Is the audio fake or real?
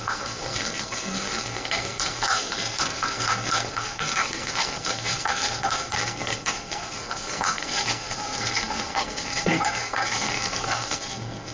fake